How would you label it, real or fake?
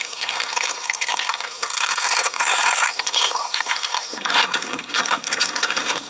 fake